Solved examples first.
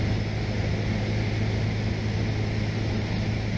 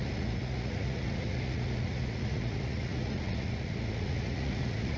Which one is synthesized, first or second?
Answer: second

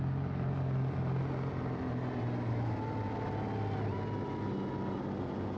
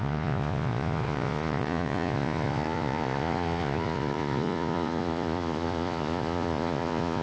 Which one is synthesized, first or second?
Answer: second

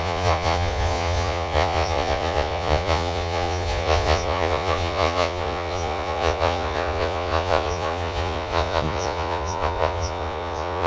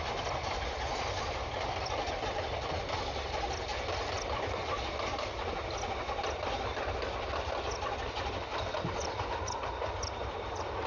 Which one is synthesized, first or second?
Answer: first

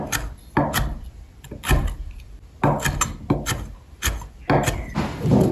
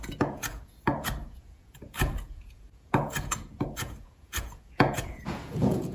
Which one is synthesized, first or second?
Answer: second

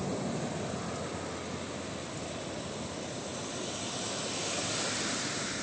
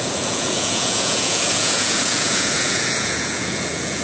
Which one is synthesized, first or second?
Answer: second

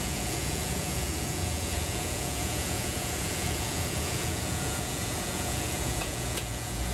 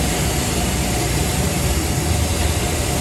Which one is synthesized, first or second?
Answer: first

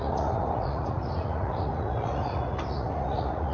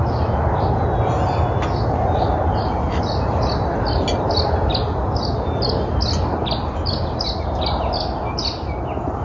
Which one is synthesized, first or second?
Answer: first